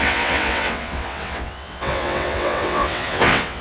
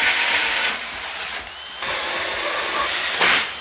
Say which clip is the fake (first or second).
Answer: first